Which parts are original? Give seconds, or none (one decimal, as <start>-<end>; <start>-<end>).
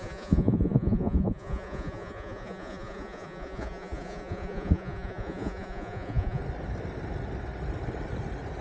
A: 6.4-8.6